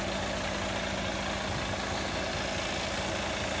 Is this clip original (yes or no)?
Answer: yes